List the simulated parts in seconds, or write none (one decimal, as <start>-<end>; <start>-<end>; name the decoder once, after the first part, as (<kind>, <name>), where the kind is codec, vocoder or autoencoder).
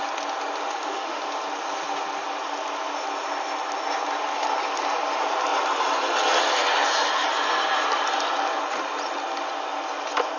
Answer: 0.6-1.2 (autoencoder, DAC-VAE)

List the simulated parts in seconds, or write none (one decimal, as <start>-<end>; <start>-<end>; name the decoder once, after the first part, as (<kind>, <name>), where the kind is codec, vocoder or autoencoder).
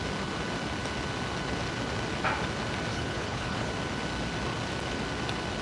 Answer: 2.9-3.7 (codec, HILCodec)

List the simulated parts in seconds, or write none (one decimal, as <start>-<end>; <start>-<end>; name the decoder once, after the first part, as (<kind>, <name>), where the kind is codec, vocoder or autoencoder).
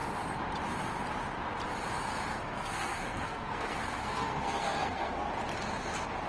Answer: 2.3-5.3 (codec, SNAC)